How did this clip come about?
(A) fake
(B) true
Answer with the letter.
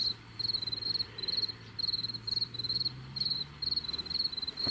B